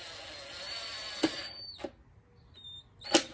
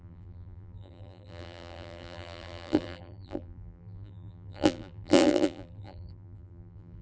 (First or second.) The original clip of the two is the first